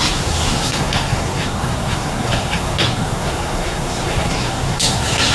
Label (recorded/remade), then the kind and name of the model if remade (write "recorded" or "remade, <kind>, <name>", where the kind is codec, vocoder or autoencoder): remade, codec, SNAC